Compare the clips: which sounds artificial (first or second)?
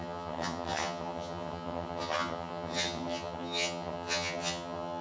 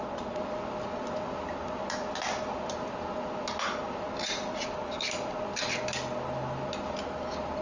first